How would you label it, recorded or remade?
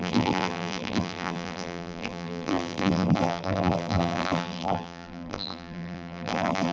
remade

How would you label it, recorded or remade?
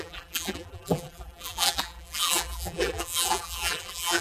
remade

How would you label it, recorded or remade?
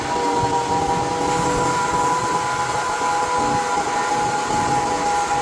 recorded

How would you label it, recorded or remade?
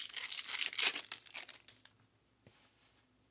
recorded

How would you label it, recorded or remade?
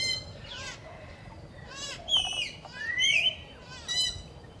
remade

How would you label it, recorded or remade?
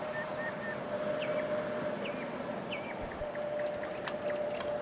recorded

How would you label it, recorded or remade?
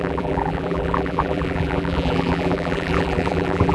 remade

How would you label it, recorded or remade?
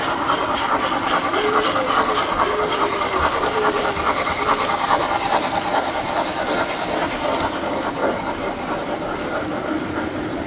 remade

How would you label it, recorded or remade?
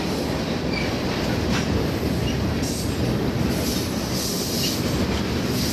recorded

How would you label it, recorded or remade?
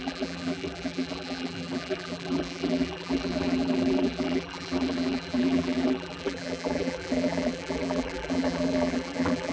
remade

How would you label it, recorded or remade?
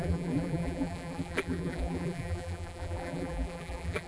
remade